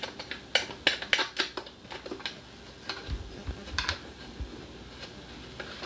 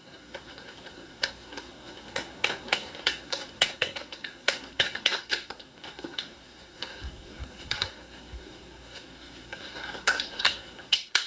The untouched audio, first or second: first